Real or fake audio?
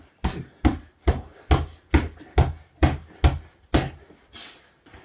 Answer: real